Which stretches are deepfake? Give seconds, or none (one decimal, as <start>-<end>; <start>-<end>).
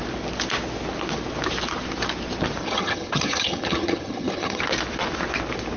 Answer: 2.6-4.6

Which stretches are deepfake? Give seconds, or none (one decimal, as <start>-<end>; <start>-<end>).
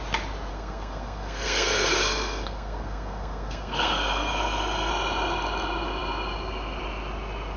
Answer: 0.5-4.9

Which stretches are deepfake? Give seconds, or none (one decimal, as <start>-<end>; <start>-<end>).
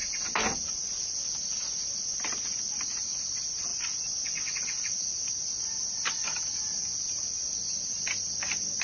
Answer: none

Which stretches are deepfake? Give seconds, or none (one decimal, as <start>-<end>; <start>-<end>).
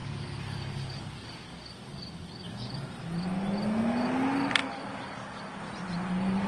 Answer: 0.0-2.9; 4.6-5.6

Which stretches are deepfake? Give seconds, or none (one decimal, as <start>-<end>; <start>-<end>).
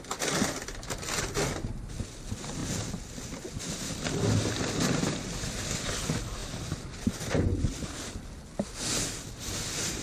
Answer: none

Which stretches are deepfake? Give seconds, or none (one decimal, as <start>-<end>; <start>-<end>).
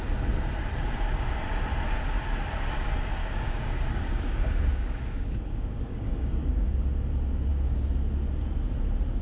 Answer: 3.2-6.8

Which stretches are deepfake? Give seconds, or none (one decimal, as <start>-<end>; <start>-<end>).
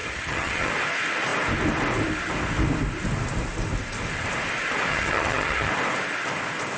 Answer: 0.0-0.7; 4.9-5.7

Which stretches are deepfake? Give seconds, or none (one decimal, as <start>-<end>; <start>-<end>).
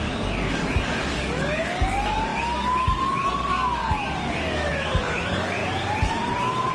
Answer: 0.0-5.6